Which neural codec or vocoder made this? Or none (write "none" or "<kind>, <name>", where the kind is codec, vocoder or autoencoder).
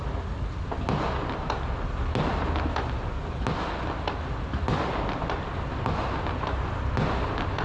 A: none